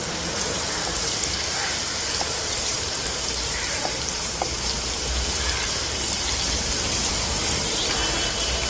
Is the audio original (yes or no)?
no